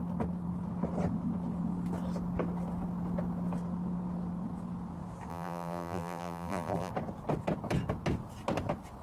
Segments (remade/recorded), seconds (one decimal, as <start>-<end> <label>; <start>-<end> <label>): 0.0-5.3 recorded; 5.3-6.9 remade; 6.9-9.0 recorded